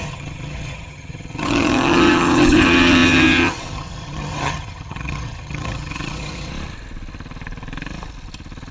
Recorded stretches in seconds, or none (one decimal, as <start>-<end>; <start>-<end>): 6.5-8.7